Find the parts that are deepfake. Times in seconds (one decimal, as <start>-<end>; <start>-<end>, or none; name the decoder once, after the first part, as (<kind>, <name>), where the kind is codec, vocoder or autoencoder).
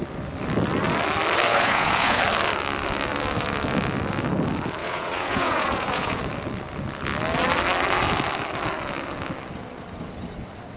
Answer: 1.5-2.2 (vocoder, Vocos); 4.8-6.2